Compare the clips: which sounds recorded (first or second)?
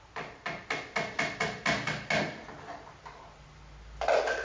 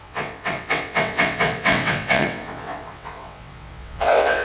first